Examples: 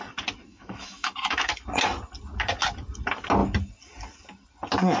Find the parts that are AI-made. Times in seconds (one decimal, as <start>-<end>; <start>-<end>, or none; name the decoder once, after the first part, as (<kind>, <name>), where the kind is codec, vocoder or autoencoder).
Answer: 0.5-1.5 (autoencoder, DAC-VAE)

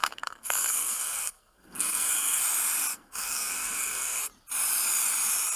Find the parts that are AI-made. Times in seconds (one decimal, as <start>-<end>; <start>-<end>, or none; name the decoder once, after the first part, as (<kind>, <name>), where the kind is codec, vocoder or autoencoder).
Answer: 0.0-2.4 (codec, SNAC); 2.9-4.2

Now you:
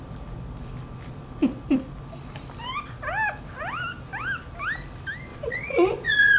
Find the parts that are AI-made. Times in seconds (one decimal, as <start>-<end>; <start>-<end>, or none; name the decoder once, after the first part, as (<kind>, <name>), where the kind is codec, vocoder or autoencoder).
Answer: 5.3-6.4 (vocoder, Vocos)

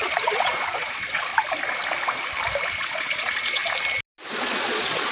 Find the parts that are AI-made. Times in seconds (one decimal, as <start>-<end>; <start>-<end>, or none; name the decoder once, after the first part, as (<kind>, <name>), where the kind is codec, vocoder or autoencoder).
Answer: 0.0-1.3 (vocoder, Vocos); 2.8-3.6; 4.3-5.1